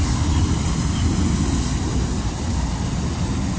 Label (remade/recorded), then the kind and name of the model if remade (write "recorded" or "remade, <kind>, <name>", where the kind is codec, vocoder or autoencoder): recorded